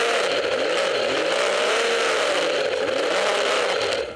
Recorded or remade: recorded